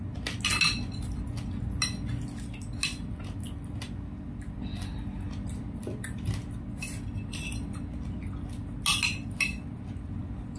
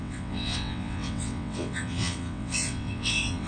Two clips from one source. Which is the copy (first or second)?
second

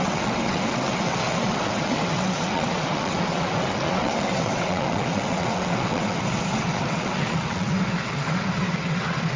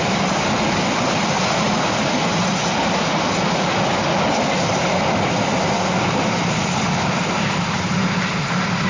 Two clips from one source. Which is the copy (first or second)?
first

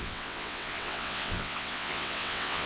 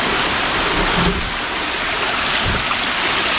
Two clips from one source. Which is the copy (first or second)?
first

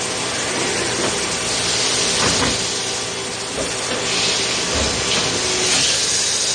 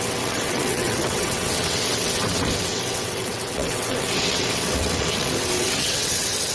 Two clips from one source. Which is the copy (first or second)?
second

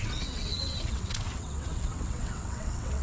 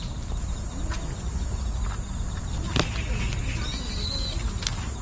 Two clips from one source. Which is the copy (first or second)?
first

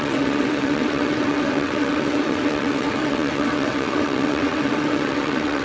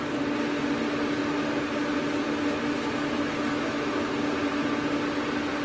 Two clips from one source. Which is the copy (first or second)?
first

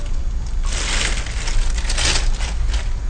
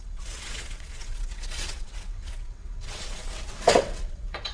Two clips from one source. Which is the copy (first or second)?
second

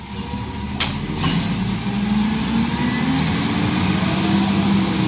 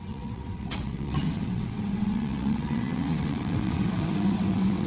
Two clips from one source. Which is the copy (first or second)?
second